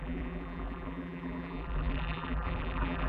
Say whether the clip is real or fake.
fake